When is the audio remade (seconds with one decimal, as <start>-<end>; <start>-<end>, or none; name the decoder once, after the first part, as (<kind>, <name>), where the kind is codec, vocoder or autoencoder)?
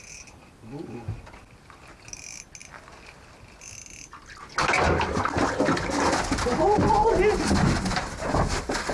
none